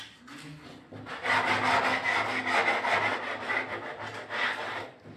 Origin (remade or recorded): recorded